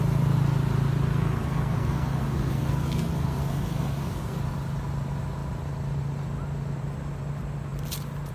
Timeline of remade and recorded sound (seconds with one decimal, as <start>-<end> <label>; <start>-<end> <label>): 0.0-1.1 recorded; 1.1-4.4 remade; 4.4-8.3 recorded